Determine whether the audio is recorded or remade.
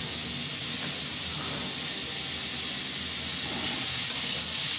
recorded